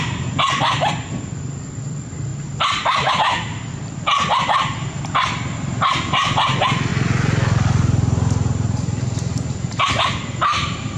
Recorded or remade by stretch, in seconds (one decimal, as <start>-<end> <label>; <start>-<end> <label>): 0.0-6.9 remade; 6.9-9.9 recorded; 9.9-11.0 remade